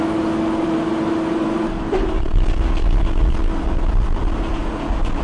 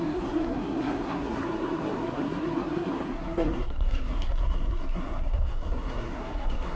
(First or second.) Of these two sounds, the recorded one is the first